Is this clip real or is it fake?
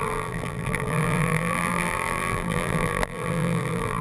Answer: fake